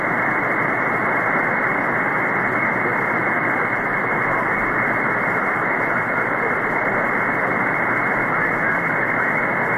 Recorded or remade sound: recorded